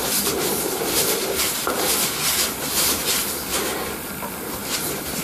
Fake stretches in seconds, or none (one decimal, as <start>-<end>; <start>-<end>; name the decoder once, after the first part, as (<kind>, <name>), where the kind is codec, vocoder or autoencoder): 0.0-5.2 (vocoder, BigVGAN v2)